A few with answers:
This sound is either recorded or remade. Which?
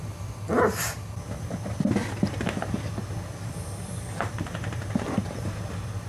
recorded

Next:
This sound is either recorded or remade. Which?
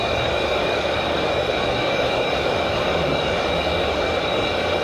remade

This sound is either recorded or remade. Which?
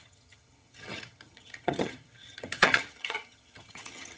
remade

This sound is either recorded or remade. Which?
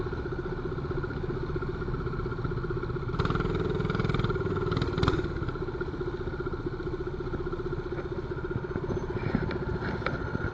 recorded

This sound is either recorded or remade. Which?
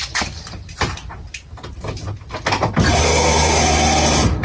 recorded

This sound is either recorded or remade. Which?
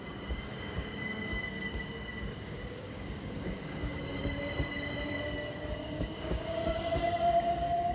remade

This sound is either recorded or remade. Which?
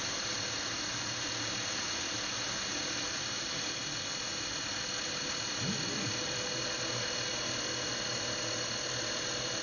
recorded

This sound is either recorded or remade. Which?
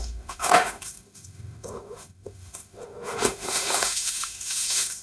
remade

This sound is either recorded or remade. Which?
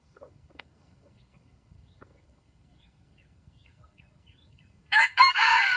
remade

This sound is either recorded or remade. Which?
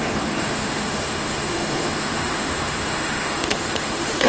remade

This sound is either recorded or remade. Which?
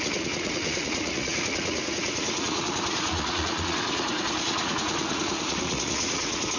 remade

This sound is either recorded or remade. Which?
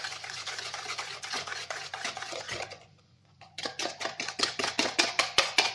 remade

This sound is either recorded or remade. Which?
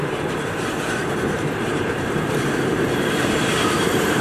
remade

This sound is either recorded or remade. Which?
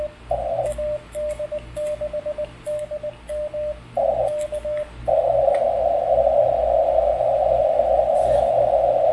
recorded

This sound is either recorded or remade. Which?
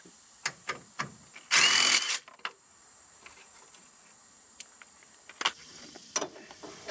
recorded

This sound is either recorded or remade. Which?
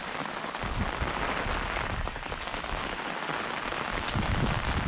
recorded